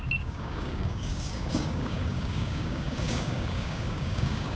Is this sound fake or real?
fake